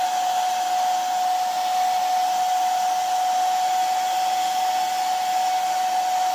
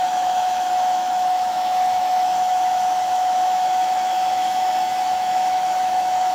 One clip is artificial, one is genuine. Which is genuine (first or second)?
first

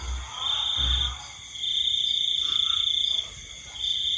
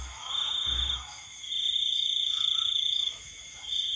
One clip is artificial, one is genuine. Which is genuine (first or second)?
first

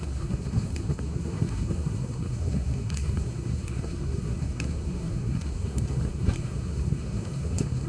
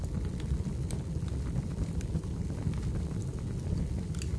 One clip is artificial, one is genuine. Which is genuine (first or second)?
second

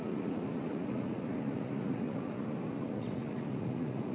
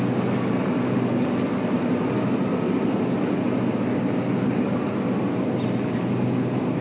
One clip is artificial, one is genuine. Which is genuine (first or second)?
second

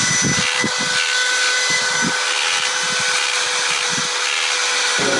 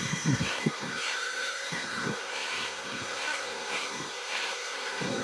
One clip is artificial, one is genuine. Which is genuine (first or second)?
first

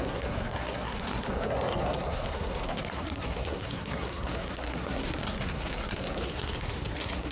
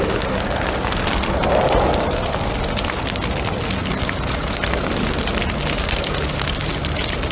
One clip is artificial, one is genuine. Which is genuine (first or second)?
second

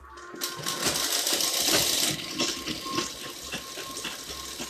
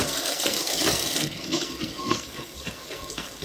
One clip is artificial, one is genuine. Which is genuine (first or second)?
first